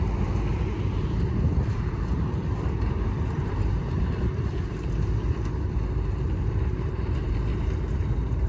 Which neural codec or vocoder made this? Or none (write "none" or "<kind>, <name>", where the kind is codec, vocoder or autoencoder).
vocoder, BigVGAN v2